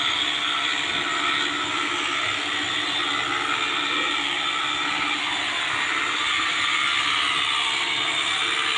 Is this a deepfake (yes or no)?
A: no